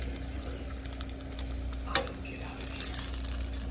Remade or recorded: recorded